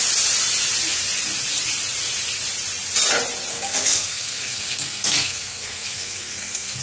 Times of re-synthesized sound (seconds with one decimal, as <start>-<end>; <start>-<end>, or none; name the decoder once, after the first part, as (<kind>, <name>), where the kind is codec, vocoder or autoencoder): 3.5-6.8 (codec, SNAC)